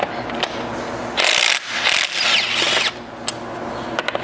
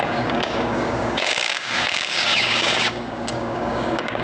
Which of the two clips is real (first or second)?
first